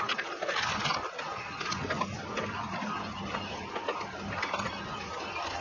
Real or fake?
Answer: real